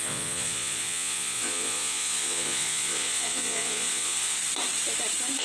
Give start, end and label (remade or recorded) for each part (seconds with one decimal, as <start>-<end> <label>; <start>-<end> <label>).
0.0-4.4 remade; 4.4-5.4 recorded